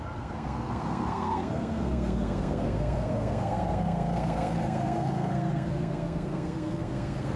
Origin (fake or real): fake